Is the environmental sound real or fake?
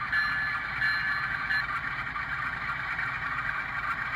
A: real